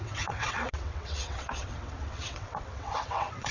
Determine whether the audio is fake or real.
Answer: fake